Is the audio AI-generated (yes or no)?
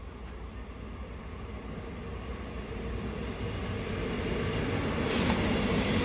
no